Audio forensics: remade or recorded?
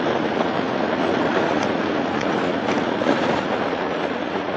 remade